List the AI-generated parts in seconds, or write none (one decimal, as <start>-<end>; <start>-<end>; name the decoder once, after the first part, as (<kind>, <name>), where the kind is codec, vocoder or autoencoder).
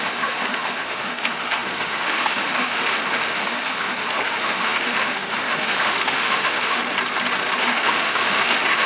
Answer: 0.0-6.8 (autoencoder, DAC-VAE); 7.6-8.9